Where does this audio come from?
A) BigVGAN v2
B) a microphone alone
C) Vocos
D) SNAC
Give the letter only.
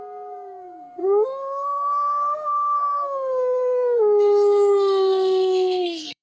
D